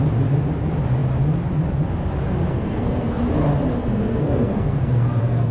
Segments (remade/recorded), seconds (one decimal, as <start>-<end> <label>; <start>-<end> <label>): 0.0-2.5 recorded; 2.5-3.2 remade; 3.2-3.8 recorded; 3.8-5.5 remade